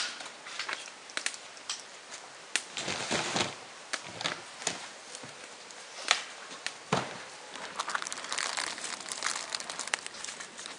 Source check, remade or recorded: recorded